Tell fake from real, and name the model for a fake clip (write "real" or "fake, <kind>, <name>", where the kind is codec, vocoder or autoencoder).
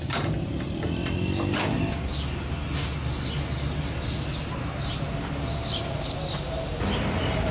real